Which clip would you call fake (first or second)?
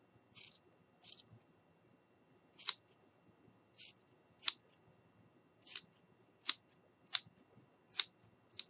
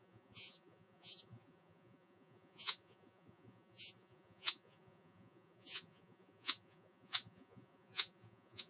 second